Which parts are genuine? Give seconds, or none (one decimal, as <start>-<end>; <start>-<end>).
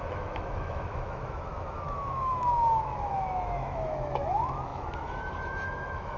none